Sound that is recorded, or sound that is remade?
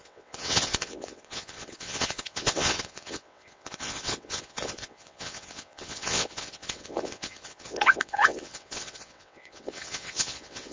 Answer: remade